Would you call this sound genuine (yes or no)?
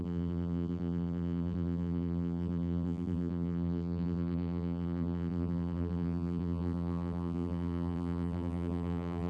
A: no